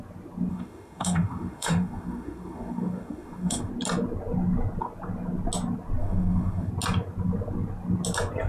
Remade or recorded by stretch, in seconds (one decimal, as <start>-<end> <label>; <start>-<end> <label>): 0.0-0.5 recorded; 0.5-3.7 remade; 3.7-6.0 recorded; 6.0-6.7 remade; 6.7-8.5 recorded